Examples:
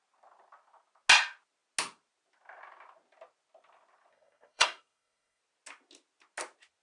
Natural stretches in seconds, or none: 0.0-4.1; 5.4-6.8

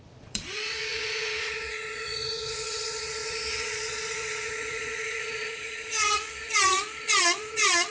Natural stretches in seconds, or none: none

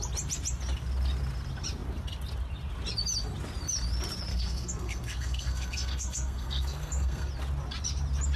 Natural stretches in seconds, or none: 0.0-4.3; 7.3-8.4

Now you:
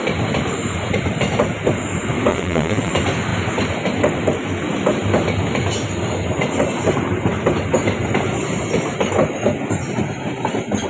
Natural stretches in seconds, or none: 0.0-2.3; 2.9-10.9

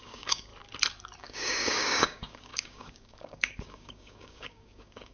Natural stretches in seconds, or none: 0.5-1.2

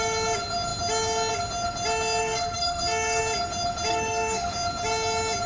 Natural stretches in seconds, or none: 0.0-2.2; 3.2-3.9; 4.5-5.5